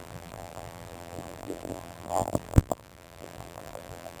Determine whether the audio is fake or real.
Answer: fake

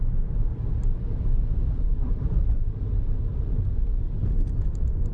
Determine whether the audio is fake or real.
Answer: fake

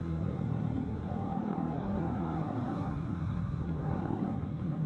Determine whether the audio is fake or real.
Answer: fake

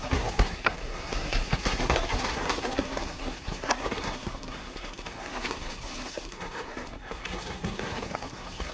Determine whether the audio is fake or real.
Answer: fake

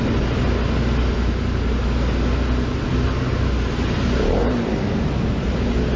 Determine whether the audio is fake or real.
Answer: real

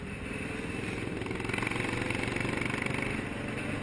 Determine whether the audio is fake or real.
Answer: real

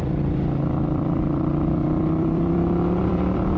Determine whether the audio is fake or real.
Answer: fake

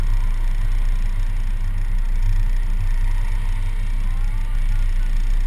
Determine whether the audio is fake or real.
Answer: real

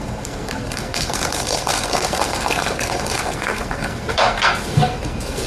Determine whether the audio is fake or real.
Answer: fake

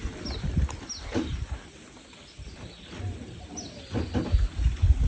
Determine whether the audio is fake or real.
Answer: real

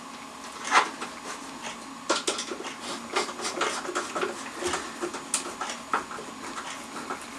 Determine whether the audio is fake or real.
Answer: real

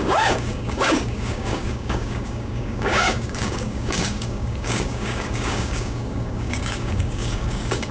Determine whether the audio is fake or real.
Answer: fake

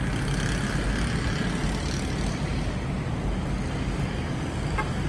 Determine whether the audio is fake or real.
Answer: real